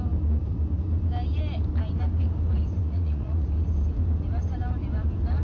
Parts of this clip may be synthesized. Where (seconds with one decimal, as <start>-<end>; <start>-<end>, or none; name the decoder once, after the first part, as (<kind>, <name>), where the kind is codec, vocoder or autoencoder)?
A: 2.8-3.5 (vocoder, Vocos)